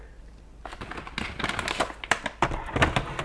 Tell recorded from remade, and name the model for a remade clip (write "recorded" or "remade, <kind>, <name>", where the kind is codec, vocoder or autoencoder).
recorded